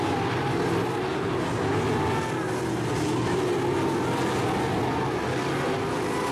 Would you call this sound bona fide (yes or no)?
yes